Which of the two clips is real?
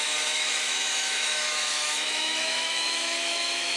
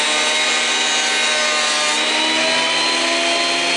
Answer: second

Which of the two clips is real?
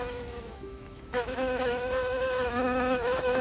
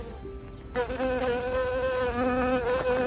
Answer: second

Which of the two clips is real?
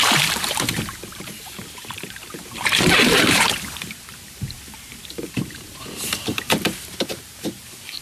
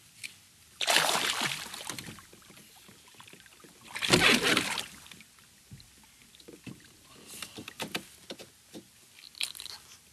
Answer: second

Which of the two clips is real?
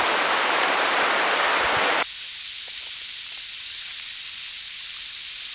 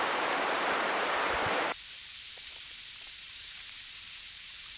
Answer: first